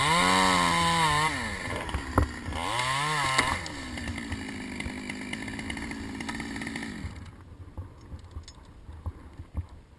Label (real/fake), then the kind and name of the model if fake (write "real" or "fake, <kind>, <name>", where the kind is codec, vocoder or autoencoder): real